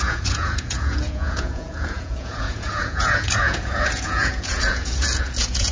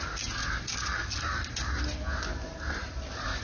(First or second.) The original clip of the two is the second